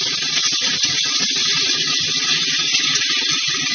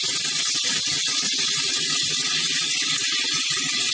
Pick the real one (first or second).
second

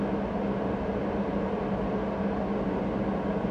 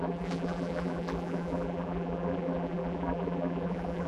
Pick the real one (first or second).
first